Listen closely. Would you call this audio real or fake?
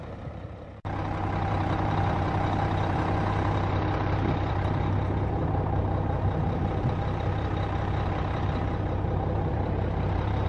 fake